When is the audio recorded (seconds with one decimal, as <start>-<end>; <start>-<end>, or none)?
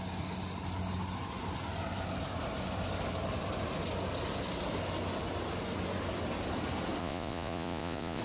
0.0-7.0